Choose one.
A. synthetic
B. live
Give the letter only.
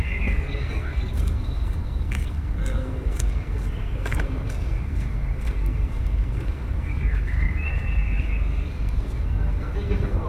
A